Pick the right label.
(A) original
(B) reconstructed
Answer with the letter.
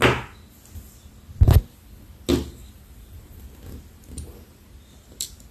A